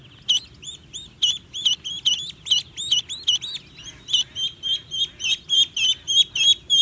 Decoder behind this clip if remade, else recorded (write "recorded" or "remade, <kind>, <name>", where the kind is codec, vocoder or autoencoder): remade, vocoder, BigVGAN v2